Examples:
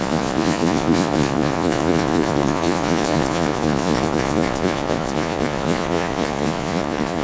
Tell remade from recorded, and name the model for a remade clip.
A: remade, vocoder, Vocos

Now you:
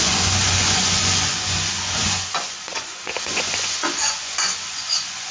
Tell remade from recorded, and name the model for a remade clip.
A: remade, vocoder, Vocos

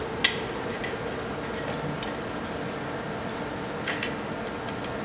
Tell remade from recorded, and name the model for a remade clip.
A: recorded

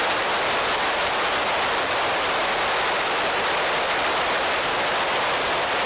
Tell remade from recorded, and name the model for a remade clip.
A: recorded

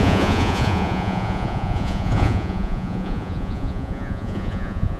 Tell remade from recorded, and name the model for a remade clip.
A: remade, vocoder, Vocos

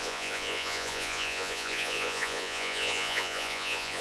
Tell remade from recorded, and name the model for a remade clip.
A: remade, vocoder, Vocos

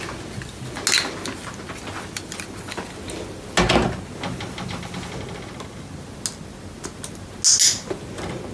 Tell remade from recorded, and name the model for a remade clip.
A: recorded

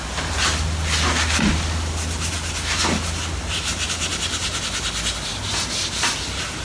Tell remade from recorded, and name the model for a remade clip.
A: recorded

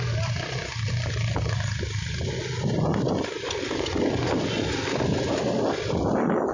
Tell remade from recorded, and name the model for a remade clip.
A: recorded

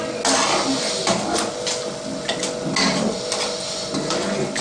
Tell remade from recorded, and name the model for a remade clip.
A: recorded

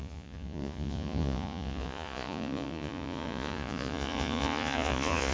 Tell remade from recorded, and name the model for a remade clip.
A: remade, vocoder, Vocos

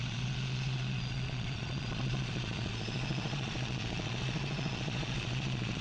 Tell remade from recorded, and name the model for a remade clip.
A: remade, vocoder, Vocos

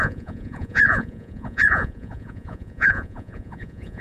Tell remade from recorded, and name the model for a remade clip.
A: remade, vocoder, Vocos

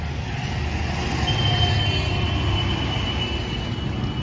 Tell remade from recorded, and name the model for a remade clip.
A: recorded